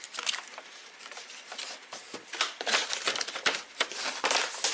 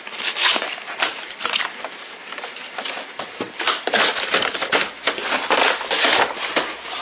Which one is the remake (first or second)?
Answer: second